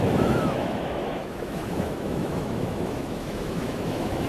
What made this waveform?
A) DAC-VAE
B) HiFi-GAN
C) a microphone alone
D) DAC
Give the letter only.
A